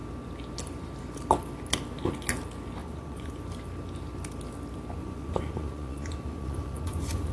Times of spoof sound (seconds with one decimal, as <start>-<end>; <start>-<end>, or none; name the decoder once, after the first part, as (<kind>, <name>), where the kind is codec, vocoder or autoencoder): 2.8-3.3 (vocoder, Vocos); 5.0-7.3